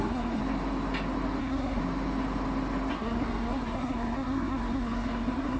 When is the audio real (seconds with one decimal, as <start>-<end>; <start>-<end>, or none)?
0.4-1.4; 1.8-2.9